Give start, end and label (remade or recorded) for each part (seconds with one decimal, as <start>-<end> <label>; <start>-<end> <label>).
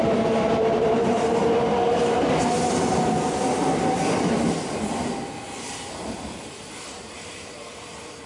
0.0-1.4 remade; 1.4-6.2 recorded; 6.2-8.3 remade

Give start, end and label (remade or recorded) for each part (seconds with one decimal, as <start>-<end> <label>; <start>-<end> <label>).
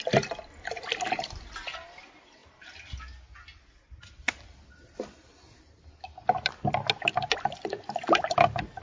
0.0-8.8 recorded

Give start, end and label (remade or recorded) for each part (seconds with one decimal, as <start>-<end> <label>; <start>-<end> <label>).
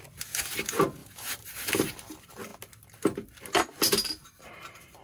0.0-1.0 recorded; 1.0-1.7 remade; 1.7-5.0 recorded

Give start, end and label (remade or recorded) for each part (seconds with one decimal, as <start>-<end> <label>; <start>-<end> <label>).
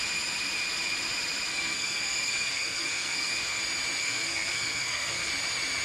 0.0-1.5 recorded; 1.5-3.6 remade; 3.6-4.0 recorded; 4.0-5.3 remade; 5.3-5.8 recorded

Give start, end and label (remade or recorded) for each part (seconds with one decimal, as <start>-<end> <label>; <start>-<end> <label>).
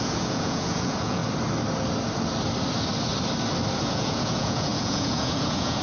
0.0-1.2 remade; 1.2-3.8 recorded; 3.8-5.8 remade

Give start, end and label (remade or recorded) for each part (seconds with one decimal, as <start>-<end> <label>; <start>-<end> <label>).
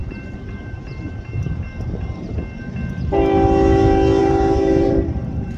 0.0-2.3 remade; 2.3-4.2 recorded; 4.2-5.6 remade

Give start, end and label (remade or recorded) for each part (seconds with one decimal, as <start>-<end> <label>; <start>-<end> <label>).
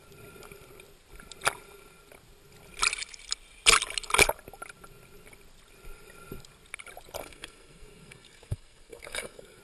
0.0-7.2 recorded; 7.2-9.6 remade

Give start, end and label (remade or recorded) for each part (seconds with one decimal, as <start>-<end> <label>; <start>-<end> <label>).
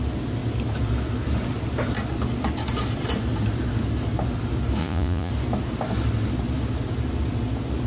0.0-4.8 recorded; 4.8-5.3 remade; 5.3-7.9 recorded